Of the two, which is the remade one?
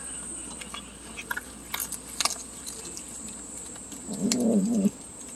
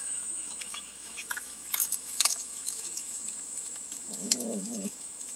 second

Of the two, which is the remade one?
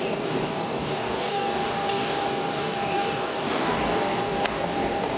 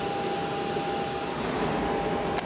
first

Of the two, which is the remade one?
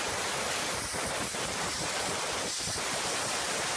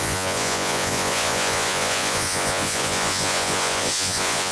second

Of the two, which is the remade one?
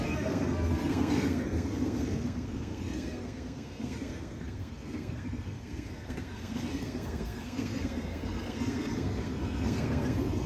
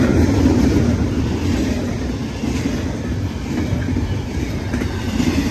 first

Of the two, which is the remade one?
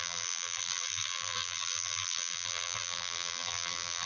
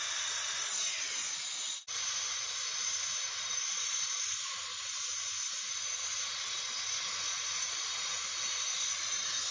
first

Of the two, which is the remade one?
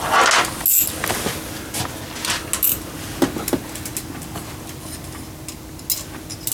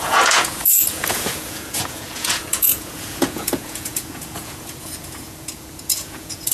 second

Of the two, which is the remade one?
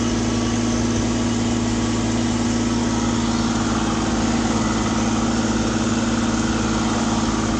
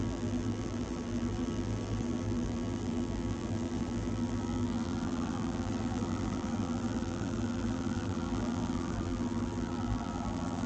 second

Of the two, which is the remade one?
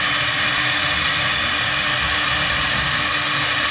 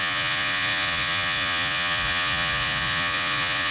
second